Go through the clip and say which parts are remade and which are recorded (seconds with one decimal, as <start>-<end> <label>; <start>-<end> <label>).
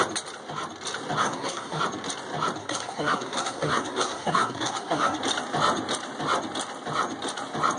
0.0-1.2 recorded; 1.2-1.8 remade; 1.8-2.6 recorded; 2.6-5.2 remade; 5.2-7.8 recorded